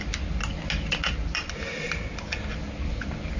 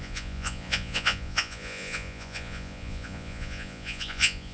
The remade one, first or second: second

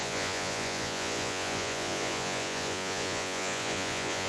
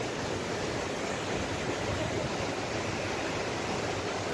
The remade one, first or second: first